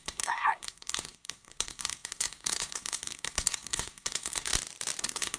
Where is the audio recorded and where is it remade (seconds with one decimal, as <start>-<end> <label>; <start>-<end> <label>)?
0.0-4.5 remade; 4.5-5.0 recorded; 5.0-5.4 remade